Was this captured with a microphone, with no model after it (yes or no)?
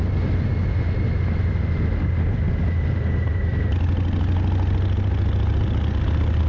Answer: yes